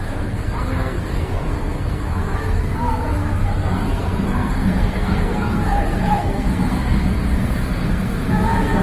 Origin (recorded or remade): remade